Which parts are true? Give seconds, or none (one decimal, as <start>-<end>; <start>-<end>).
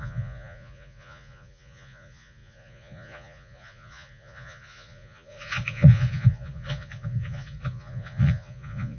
none